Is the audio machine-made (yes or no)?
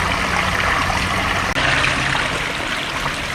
no